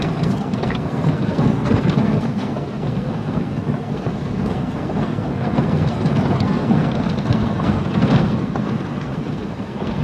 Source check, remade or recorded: remade